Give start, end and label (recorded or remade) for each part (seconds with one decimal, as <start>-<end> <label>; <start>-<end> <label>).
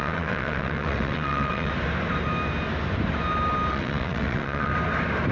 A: 0.0-1.7 remade; 1.7-3.7 recorded; 3.7-4.7 remade; 4.7-5.3 recorded